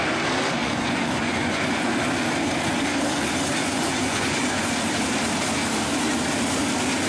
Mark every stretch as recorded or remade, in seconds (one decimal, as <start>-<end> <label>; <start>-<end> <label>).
0.0-0.6 recorded; 0.6-1.9 remade; 1.9-3.6 recorded; 3.6-4.7 remade; 4.7-7.1 recorded